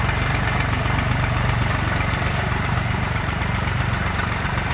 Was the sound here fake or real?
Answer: fake